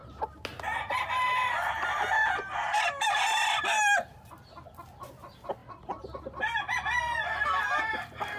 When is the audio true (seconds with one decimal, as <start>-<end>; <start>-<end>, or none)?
0.0-8.4